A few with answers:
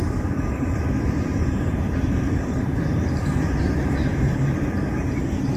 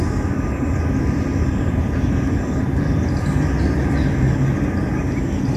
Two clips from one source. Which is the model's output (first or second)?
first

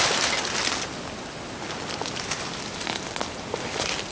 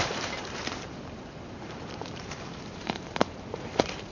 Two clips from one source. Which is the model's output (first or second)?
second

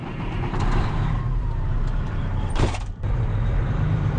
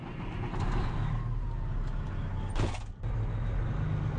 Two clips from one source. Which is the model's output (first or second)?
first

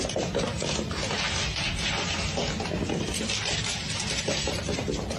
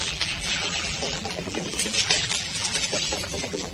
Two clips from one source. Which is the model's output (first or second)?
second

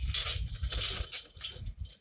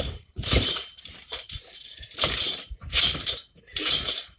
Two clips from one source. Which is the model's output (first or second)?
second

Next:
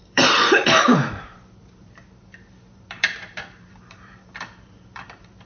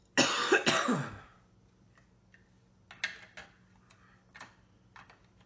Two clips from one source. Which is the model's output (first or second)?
first